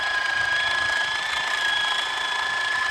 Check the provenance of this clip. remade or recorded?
recorded